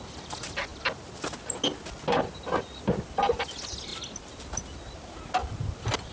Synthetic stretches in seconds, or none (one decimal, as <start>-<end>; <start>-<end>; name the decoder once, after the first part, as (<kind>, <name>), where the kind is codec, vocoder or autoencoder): none

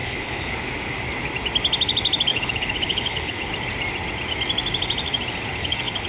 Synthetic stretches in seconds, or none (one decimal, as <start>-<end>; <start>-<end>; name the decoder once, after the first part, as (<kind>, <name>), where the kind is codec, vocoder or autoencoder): 0.0-0.5 (codec, HILCodec); 2.3-3.5; 5.6-6.1

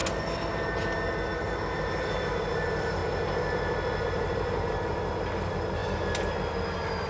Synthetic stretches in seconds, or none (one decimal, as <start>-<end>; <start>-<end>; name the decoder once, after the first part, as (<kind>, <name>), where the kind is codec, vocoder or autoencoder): 0.5-3.0 (vocoder, BigVGAN v2); 4.0-5.8

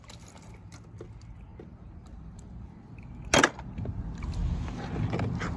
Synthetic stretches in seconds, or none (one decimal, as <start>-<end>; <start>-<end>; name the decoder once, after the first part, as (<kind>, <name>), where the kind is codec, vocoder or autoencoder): none

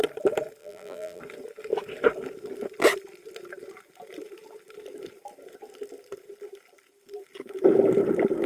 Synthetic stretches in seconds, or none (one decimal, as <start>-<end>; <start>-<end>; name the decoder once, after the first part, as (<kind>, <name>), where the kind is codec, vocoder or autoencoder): 0.6-1.2 (vocoder, BigVGAN v2)

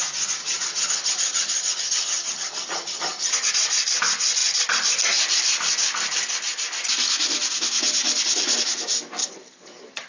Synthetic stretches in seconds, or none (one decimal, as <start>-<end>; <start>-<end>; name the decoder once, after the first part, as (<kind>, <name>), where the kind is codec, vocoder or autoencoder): 0.4-3.5 (vocoder, HiFi-GAN); 9.2-10.1

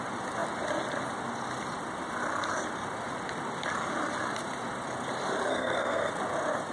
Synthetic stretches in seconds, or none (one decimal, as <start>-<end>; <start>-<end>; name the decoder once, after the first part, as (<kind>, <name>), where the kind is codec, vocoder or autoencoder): 5.5-6.1 (codec, SNAC)

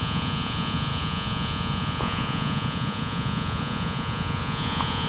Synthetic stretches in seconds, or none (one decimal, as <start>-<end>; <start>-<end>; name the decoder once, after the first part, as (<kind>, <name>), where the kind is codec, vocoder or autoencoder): 0.0-5.1 (vocoder, Vocos)